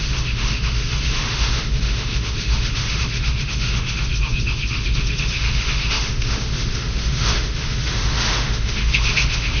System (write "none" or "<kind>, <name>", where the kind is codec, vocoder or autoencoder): autoencoder, DAC-VAE